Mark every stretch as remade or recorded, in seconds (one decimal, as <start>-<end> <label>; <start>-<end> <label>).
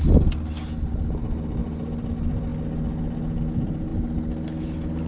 0.0-5.1 recorded